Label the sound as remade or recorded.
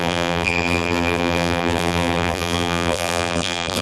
remade